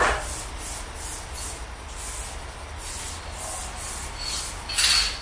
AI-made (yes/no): no